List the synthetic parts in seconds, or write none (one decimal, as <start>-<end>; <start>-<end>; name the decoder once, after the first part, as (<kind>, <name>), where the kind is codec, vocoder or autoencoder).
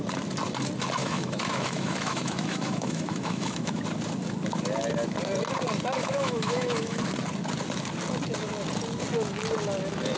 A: 1.0-3.8 (autoencoder, DAC-VAE); 6.0-7.0